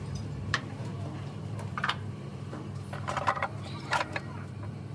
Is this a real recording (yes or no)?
no